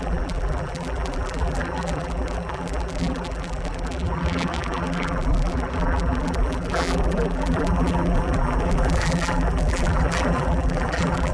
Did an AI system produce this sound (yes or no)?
yes